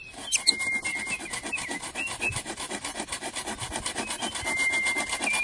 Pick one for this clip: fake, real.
real